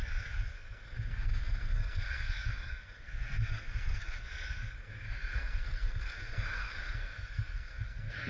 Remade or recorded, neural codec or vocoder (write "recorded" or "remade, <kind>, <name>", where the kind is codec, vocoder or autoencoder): remade, codec, SNAC